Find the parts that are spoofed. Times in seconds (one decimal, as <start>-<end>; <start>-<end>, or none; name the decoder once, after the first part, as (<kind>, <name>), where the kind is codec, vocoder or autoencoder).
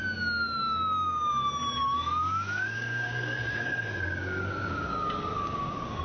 0.6-1.3 (codec, DAC); 2.2-6.0